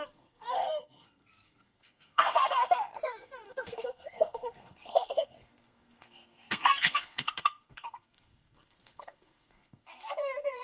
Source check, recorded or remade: remade